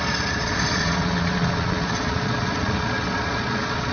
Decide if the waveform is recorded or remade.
remade